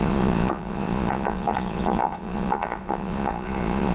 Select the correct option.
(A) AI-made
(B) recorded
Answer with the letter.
A